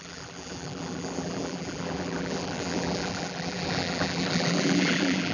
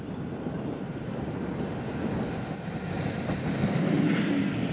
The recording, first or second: second